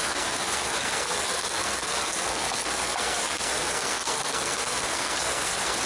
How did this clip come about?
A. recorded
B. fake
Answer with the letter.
B